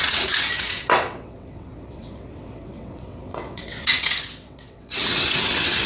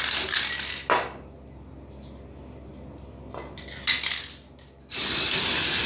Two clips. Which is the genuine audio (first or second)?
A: second